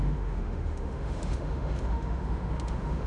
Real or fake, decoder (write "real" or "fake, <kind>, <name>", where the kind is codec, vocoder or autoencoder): fake, autoencoder, DAC-VAE